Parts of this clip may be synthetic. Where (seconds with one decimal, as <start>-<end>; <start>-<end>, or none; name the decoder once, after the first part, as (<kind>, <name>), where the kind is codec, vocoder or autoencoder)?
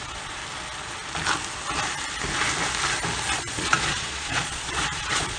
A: 0.0-0.4 (vocoder, Vocos); 3.4-5.4